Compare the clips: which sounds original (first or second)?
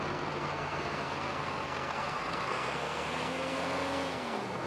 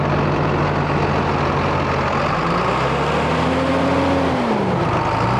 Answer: second